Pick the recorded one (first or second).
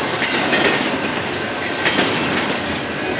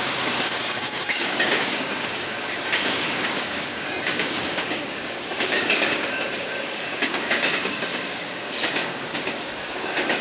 first